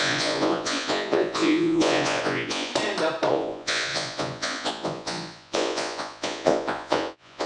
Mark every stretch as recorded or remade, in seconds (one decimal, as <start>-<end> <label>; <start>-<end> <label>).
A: 0.0-2.7 remade; 2.7-3.3 recorded; 3.3-7.5 remade